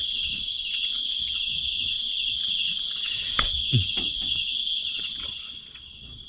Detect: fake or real fake